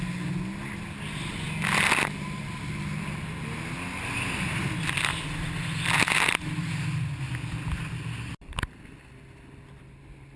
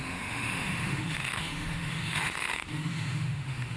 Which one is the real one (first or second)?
first